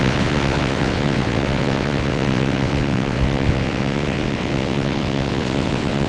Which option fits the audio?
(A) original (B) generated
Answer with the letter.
B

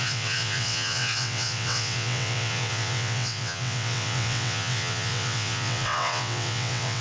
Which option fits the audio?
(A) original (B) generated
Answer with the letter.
B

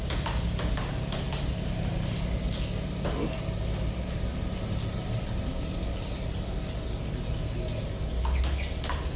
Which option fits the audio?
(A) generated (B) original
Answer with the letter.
B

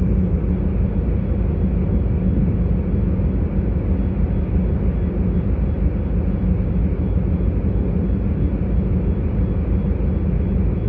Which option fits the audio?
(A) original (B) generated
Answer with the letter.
A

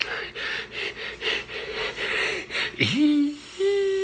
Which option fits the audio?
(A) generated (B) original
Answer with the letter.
B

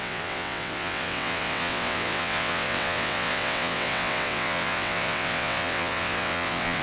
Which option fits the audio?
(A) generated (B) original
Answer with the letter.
A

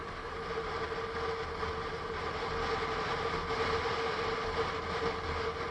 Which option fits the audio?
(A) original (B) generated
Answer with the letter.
A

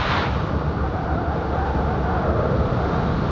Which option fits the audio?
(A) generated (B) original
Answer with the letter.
B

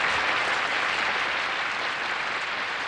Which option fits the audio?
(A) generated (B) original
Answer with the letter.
B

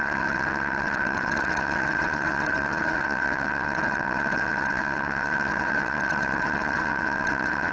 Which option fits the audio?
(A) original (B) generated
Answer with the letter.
B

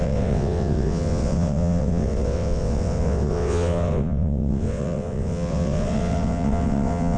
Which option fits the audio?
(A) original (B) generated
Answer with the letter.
B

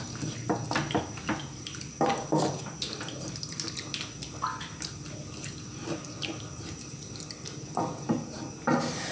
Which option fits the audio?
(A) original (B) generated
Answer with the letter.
A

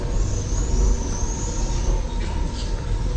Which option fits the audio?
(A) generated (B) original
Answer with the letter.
B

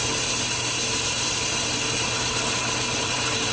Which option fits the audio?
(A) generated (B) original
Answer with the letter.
B